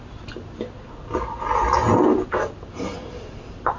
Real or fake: real